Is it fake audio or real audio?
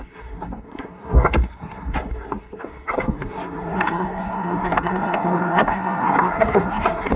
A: fake